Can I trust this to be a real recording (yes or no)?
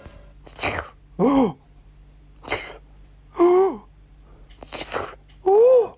yes